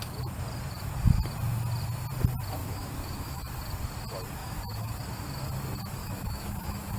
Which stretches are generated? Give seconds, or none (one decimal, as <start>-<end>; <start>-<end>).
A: 2.6-3.5; 4.4-5.0; 6.0-7.0